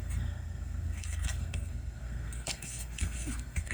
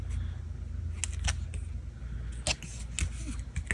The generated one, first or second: first